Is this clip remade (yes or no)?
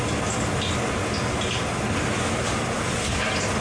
no